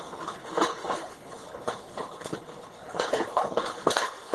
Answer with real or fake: fake